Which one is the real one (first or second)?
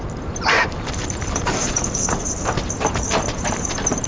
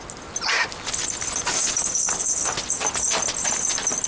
second